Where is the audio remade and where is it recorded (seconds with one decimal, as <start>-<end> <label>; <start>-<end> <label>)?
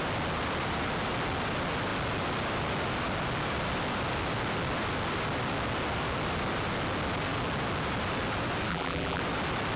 0.0-8.7 recorded; 8.7-9.2 remade; 9.2-9.8 recorded